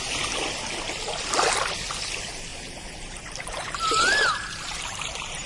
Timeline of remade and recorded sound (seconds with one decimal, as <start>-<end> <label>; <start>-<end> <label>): 0.0-2.5 recorded; 2.5-5.5 remade